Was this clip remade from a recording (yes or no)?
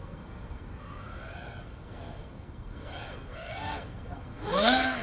yes